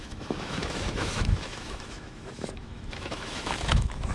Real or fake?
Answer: fake